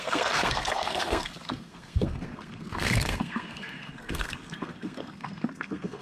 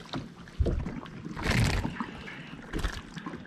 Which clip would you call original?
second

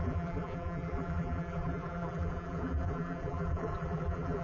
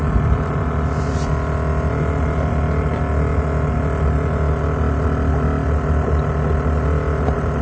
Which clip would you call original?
second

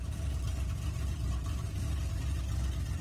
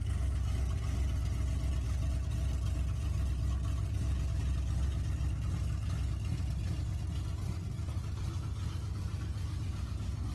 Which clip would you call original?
second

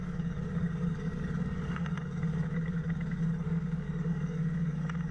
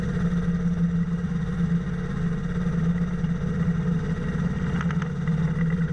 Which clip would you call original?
second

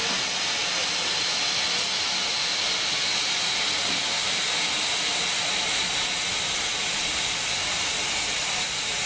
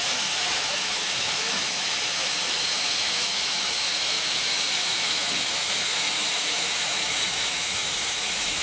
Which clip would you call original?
first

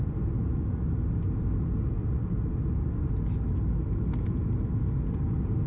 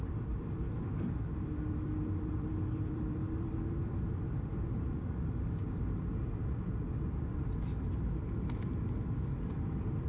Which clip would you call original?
first